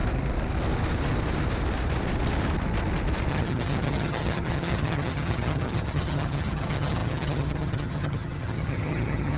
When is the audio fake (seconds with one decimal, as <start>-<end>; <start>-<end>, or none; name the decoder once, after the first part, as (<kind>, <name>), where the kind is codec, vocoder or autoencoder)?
3.3-9.4 (vocoder, HiFi-GAN)